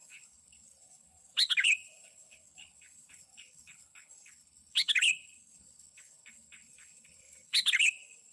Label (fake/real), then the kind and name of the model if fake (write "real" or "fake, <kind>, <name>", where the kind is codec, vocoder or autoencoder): fake, codec, HILCodec